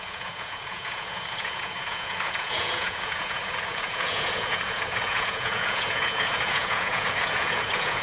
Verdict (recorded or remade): remade